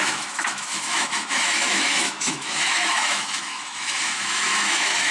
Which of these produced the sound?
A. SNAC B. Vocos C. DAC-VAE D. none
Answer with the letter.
C